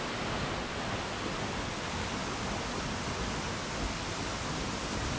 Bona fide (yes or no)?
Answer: yes